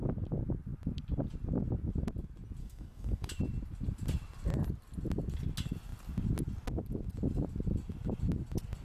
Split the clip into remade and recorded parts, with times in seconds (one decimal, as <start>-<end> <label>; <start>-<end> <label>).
0.0-2.6 recorded; 2.6-3.3 remade; 3.3-8.8 recorded

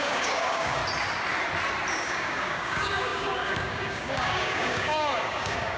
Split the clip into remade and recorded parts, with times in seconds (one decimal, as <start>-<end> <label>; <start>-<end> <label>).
0.0-0.8 remade; 0.8-1.9 recorded; 1.9-5.8 remade

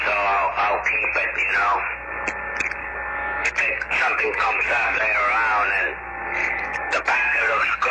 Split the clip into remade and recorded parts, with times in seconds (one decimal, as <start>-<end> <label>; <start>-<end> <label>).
0.0-2.8 recorded; 2.8-5.0 remade; 5.0-6.4 recorded; 6.4-7.9 remade

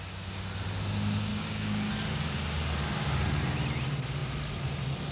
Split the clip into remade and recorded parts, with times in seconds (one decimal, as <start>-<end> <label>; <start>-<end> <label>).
0.0-1.3 recorded; 1.3-1.9 remade; 1.9-5.1 recorded

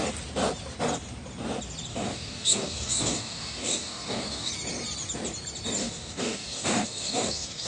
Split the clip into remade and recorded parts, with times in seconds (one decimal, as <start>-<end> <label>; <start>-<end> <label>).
0.0-1.9 recorded; 1.9-4.5 remade; 4.5-5.8 recorded; 5.8-7.7 remade